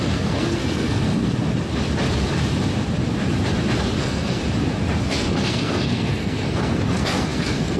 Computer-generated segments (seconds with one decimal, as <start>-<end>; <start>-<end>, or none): 0.0-1.2; 4.0-4.4; 5.0-7.8